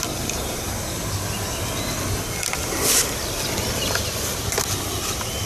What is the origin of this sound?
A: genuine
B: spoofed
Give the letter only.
A